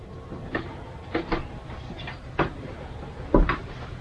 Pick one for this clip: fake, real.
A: fake